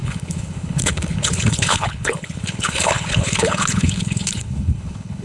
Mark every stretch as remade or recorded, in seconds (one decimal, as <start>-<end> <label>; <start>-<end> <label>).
0.0-5.2 remade